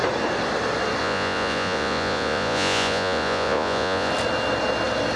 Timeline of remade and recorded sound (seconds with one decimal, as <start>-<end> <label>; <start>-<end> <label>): 0.0-1.0 recorded; 1.0-4.1 remade; 4.1-5.2 recorded